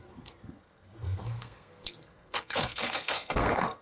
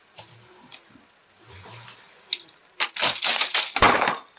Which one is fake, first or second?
first